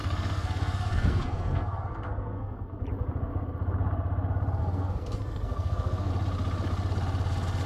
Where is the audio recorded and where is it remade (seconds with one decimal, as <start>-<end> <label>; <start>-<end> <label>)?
0.0-2.8 remade; 2.8-4.6 recorded; 4.6-6.1 remade; 6.1-7.7 recorded